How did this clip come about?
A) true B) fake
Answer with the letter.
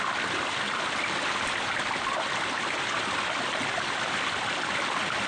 A